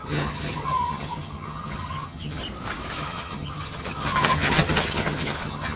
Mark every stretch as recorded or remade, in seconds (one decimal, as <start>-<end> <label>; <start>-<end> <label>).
0.0-2.4 remade; 2.4-3.0 recorded; 3.0-5.8 remade

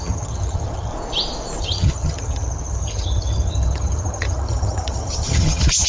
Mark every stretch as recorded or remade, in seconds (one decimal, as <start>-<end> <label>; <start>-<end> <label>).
0.0-0.9 remade; 0.9-1.6 recorded; 1.6-5.9 remade

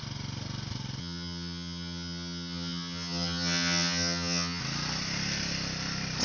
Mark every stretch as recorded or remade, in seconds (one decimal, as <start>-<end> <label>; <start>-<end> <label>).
0.0-1.0 recorded; 1.0-4.6 remade; 4.6-6.2 recorded

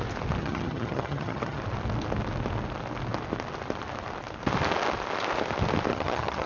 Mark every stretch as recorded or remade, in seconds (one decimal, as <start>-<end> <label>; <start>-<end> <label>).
0.0-0.4 recorded; 0.4-1.6 remade; 1.6-5.9 recorded; 5.9-6.5 remade